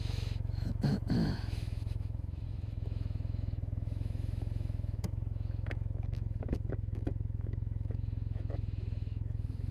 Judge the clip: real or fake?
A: fake